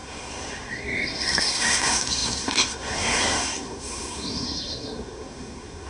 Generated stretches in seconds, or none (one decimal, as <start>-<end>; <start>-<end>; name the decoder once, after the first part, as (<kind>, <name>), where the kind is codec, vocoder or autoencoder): 0.0-5.9 (codec, SNAC)